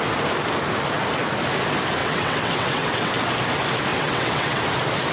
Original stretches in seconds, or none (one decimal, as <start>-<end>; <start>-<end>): 0.0-2.0; 3.1-3.9; 4.6-5.1